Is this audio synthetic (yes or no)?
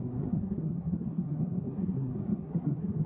yes